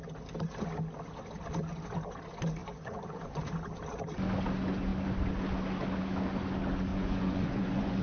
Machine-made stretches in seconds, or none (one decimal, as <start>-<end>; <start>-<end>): 2.6-3.4; 6.9-8.0